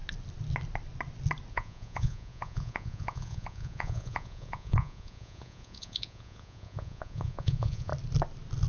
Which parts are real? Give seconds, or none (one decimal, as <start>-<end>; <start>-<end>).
0.0-1.5; 7.9-8.7